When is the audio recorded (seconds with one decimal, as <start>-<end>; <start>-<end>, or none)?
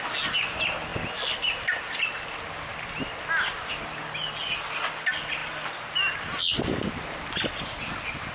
0.0-8.3